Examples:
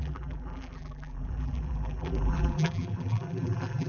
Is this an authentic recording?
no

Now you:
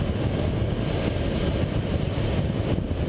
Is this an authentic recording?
yes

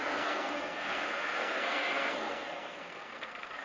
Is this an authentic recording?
no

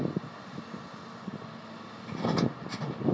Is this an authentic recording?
yes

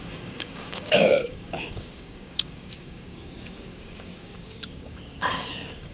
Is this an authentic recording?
no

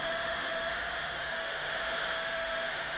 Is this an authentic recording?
no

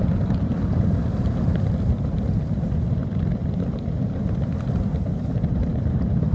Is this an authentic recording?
yes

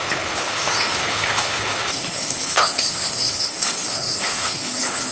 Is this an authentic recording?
no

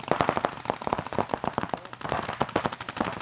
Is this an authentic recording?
yes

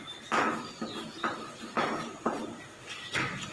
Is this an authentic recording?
yes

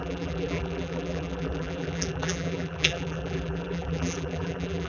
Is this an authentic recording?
no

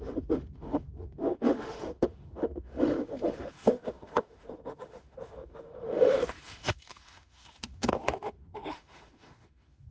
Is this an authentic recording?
no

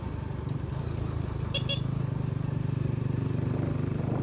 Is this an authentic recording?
yes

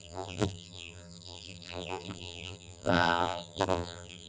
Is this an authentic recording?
no